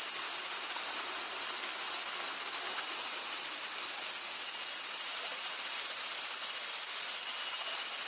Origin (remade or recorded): recorded